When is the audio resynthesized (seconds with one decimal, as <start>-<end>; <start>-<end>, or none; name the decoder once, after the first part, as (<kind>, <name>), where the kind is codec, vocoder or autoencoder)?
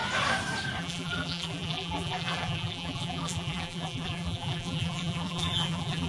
0.8-6.1 (vocoder, BigVGAN v2)